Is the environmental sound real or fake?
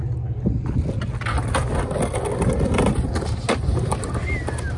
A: real